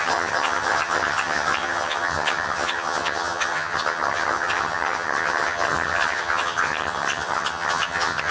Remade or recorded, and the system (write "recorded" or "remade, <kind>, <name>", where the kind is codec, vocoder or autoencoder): remade, vocoder, HiFi-GAN